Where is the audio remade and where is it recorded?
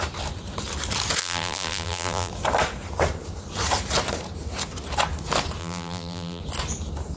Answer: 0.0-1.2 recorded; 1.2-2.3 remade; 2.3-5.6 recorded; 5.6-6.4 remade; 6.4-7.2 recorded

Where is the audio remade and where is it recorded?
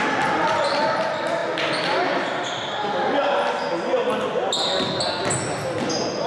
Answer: 0.0-6.3 recorded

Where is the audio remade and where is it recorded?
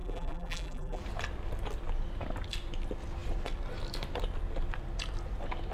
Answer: 0.0-1.0 remade; 1.0-5.7 recorded